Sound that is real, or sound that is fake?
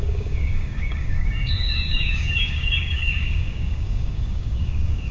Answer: fake